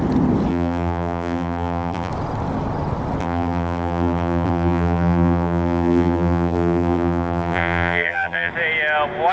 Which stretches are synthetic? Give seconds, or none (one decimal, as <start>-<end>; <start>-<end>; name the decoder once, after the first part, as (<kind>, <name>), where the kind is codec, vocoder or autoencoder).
0.5-2.1 (vocoder, BigVGAN v2); 3.2-8.5